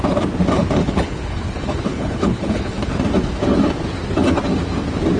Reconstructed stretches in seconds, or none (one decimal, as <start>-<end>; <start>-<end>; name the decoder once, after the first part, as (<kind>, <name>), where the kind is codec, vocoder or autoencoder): 0.8-2.9 (codec, HILCodec)